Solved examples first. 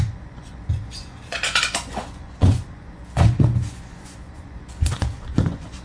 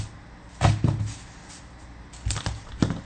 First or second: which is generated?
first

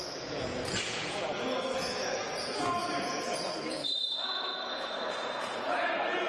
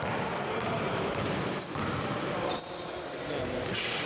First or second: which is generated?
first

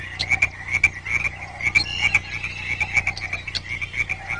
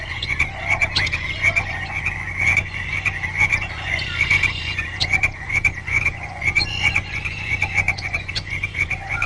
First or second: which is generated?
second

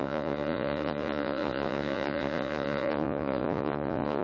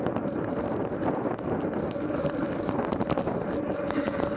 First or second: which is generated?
first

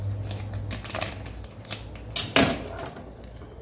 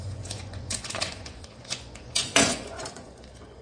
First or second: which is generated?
second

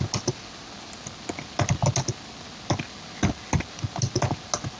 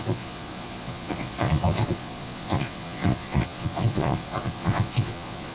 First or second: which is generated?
second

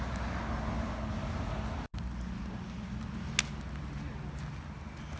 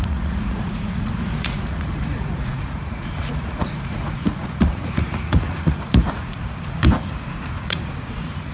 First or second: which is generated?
second